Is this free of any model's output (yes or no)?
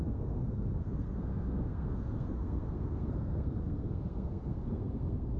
no